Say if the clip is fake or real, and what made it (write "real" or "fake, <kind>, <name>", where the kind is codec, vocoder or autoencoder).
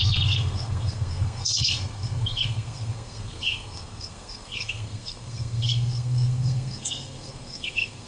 fake, codec, SNAC